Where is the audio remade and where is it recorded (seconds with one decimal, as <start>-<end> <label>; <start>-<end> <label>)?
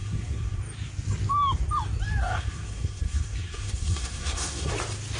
0.0-0.6 remade; 0.6-2.2 recorded; 2.2-4.7 remade; 4.7-5.2 recorded